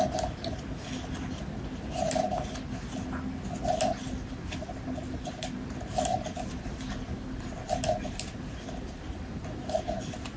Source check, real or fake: real